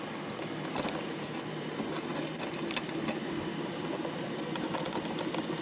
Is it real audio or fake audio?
real